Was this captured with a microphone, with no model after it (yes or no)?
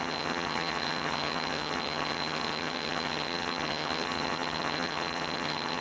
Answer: no